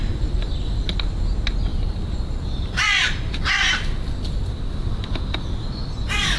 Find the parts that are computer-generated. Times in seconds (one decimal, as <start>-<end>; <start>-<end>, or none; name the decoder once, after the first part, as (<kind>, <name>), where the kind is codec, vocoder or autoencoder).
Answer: 1.7-4.5 (vocoder, BigVGAN v2)